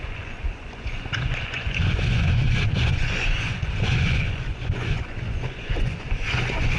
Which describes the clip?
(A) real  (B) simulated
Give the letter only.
B